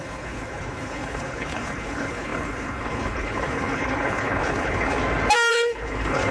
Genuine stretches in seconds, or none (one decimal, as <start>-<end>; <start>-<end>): 5.0-5.5